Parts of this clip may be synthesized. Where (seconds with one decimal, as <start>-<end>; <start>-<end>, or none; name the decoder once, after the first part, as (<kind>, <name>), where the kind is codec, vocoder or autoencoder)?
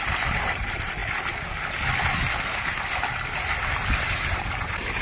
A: 0.0-1.0 (vocoder, BigVGAN v2); 4.0-5.0